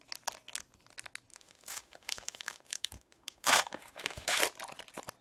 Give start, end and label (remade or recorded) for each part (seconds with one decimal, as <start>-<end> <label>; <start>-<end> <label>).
0.0-1.3 recorded; 1.3-4.4 remade; 4.4-5.2 recorded